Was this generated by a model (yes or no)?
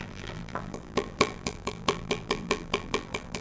yes